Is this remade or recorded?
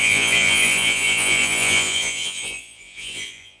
remade